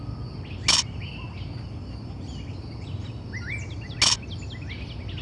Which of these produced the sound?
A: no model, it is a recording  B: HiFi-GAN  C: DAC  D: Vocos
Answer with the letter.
A